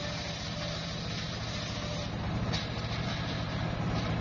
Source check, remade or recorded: recorded